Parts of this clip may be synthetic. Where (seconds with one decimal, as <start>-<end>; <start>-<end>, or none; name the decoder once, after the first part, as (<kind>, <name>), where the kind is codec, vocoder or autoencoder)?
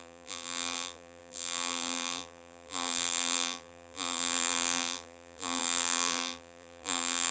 0.0-7.3 (vocoder, BigVGAN v2)